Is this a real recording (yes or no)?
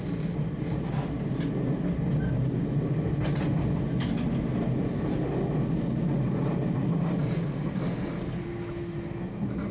yes